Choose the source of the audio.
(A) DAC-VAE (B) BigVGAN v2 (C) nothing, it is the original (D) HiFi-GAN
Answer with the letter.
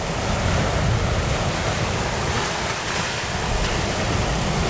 C